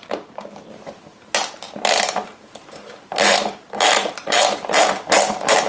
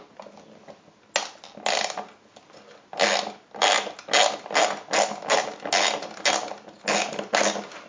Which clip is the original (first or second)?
second